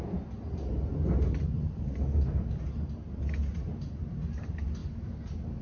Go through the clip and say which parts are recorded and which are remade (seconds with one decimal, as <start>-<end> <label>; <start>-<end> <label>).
0.0-5.6 recorded